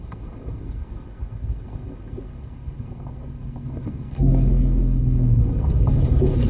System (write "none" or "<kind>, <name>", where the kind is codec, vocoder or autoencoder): codec, SNAC